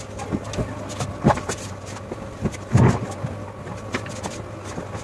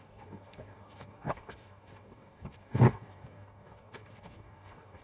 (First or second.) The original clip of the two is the first